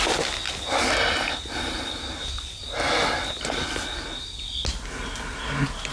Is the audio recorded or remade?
recorded